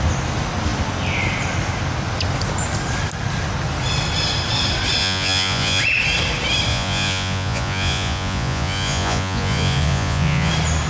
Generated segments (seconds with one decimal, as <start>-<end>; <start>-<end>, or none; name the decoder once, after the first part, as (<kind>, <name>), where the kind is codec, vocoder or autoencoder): 5.0-5.8 (vocoder, Vocos); 6.7-10.5